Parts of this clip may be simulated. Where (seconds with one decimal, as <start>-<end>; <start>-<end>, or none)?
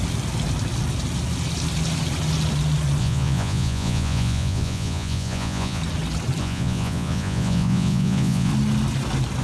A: 3.0-5.8; 6.4-8.5